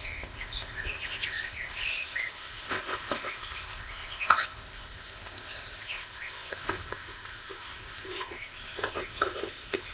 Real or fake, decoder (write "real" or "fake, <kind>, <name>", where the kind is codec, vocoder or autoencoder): fake, codec, ZipCodec